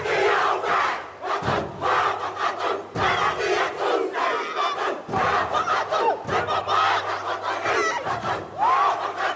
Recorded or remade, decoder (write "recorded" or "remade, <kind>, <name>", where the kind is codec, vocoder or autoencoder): recorded